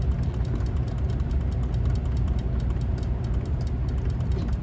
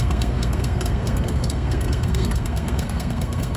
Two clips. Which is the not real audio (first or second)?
second